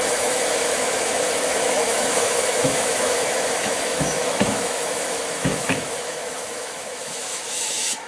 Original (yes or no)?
no